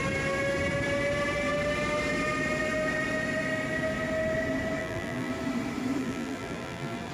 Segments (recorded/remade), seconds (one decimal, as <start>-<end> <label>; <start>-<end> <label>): 0.0-4.8 recorded; 4.8-5.3 remade; 5.3-6.0 recorded; 6.0-7.1 remade